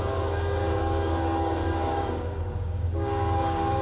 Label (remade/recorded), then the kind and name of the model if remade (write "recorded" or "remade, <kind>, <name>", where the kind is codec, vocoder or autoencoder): remade, codec, DAC